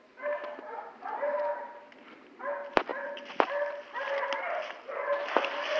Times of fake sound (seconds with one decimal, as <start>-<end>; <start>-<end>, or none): none